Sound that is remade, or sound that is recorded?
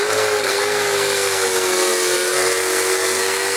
remade